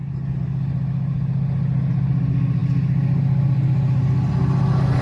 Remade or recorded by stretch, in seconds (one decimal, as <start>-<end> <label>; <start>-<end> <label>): 0.0-5.0 recorded